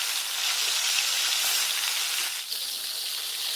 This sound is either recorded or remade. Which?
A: recorded